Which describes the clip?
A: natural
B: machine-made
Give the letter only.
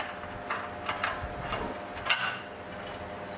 A